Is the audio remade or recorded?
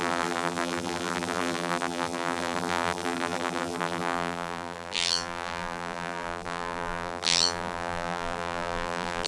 remade